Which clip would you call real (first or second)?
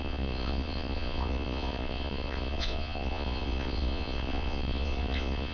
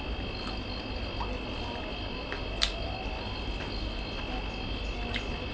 second